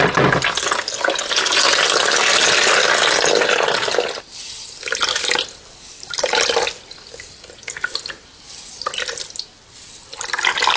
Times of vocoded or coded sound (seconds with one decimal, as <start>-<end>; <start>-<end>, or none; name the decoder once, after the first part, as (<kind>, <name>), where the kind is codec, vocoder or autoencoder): none

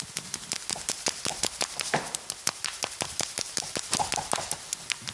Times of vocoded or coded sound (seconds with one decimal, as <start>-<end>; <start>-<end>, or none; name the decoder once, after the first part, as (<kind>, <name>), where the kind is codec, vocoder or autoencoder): 1.3-3.8 (vocoder, BigVGAN v2)